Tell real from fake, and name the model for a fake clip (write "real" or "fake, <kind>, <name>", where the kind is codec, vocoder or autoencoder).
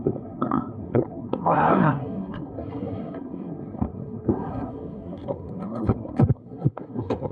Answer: fake, codec, SNAC